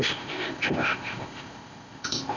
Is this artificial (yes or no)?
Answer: yes